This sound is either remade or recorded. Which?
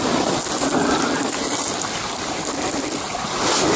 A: recorded